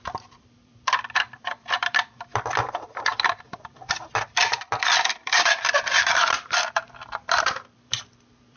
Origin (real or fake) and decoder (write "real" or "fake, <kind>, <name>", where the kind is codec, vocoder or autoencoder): fake, vocoder, BigVGAN v2